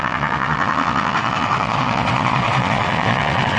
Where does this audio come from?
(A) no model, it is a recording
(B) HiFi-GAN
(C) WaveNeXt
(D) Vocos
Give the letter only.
D